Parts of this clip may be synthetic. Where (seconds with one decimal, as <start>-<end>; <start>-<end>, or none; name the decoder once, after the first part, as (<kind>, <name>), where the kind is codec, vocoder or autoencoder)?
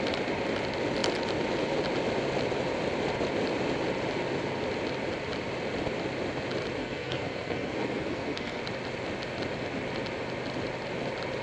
6.8-8.6 (codec, SNAC)